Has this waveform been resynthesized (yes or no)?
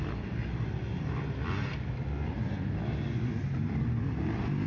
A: no